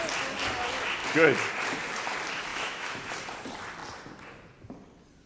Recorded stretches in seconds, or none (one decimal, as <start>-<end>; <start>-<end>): 0.0-2.5; 3.1-5.3